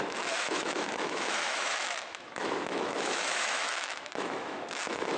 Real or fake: fake